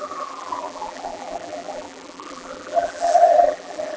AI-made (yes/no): yes